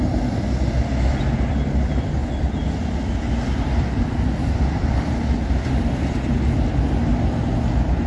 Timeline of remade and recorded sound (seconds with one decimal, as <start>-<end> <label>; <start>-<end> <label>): 0.0-8.1 recorded